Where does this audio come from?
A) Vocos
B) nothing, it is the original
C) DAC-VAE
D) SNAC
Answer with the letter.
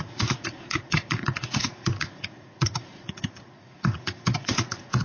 A